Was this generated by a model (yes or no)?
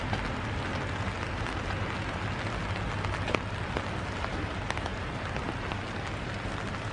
no